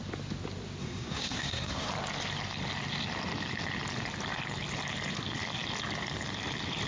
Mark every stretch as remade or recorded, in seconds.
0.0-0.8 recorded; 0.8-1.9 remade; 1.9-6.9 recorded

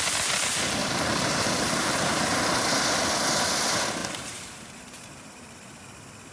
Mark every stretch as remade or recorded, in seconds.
0.0-0.8 recorded; 0.8-2.4 remade; 2.4-4.0 recorded; 4.0-5.8 remade; 5.8-6.3 recorded

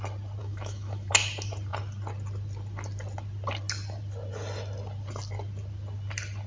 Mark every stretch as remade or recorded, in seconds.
0.0-0.4 recorded; 0.4-1.1 remade; 1.1-6.5 recorded

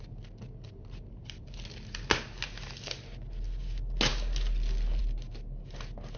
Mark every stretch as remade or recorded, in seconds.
0.0-6.2 recorded

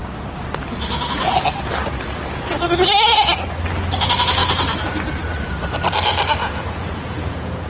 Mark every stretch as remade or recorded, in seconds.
0.0-6.4 recorded; 6.4-7.7 remade

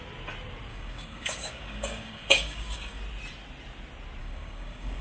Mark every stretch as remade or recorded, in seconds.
0.0-0.7 recorded; 0.7-3.0 remade; 3.0-4.2 recorded; 4.2-5.0 remade